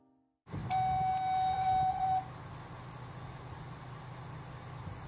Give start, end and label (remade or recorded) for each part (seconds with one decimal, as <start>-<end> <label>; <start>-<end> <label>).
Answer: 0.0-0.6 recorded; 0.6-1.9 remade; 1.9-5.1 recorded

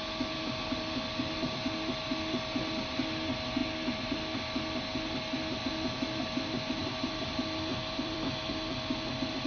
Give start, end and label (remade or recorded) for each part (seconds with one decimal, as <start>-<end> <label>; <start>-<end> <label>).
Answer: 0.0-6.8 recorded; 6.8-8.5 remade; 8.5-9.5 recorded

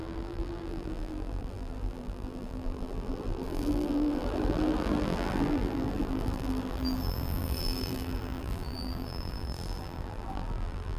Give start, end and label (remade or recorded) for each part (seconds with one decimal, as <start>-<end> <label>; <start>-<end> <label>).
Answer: 0.0-11.0 remade